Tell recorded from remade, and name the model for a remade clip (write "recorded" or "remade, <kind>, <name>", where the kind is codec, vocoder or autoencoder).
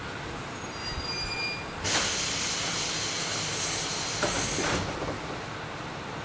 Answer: recorded